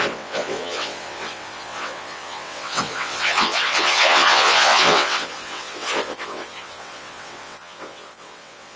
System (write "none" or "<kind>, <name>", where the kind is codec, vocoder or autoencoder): vocoder, WaveNeXt